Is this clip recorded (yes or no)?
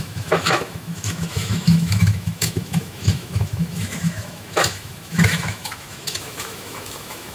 no